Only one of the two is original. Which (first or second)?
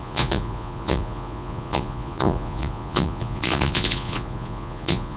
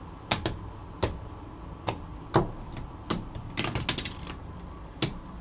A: second